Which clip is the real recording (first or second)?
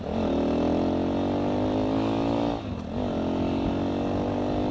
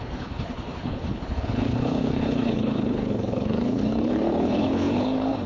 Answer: first